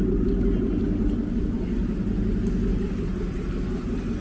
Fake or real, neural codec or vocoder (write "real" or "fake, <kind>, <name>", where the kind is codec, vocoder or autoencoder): real